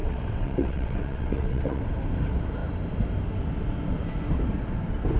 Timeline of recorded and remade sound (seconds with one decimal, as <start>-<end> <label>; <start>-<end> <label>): 0.0-1.8 remade; 1.8-5.2 recorded